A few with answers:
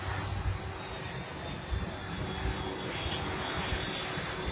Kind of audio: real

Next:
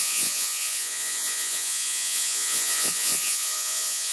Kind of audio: fake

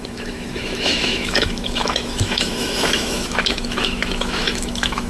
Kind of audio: fake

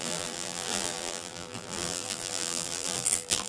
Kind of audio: fake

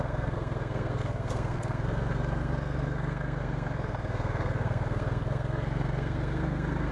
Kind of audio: fake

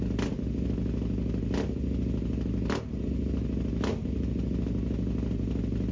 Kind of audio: real